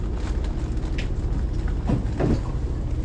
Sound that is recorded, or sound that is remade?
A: recorded